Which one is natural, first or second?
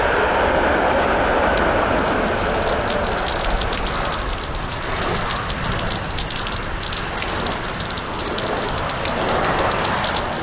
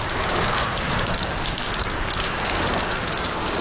first